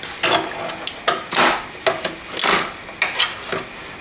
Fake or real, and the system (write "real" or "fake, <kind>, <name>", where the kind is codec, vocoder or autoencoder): real